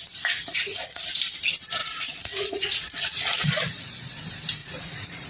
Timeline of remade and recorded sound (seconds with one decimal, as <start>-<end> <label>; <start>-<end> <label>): 0.0-0.4 recorded; 0.4-1.2 remade; 1.2-1.8 recorded; 1.8-3.4 remade; 3.4-4.6 recorded; 4.6-5.3 remade